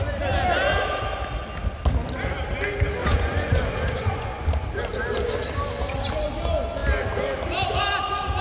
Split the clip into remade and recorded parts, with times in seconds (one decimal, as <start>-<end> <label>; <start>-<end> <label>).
0.0-3.0 recorded; 3.0-4.7 remade; 4.7-8.4 recorded